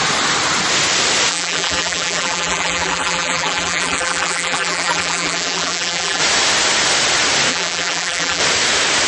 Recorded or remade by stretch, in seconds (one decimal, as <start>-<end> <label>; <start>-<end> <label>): 0.0-1.3 recorded; 1.3-6.2 remade; 6.2-7.5 recorded; 7.5-8.4 remade; 8.4-9.1 recorded